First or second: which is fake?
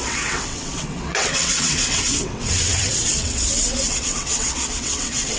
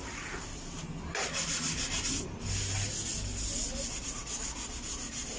first